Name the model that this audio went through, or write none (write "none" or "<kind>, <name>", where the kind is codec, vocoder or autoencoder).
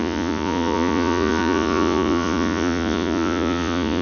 vocoder, Vocos